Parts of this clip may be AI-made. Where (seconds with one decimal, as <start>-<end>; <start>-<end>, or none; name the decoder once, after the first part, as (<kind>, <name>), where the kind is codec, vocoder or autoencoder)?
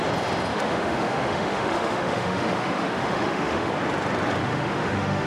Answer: 0.5-3.7 (autoencoder, DAC-VAE); 4.4-5.3